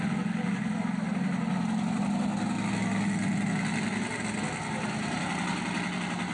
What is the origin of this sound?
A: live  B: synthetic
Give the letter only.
A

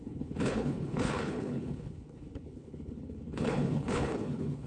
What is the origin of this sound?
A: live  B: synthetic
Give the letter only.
B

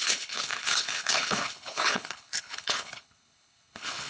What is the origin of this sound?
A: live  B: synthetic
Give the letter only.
B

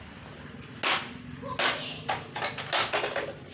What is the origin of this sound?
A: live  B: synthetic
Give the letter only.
A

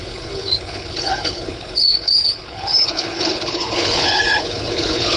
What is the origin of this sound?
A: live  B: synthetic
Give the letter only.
B